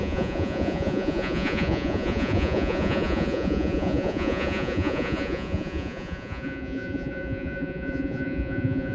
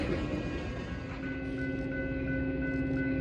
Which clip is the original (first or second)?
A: second